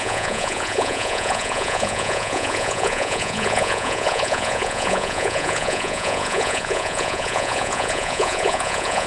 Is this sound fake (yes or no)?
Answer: yes